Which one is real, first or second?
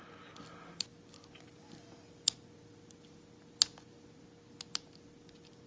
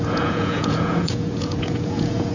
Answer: first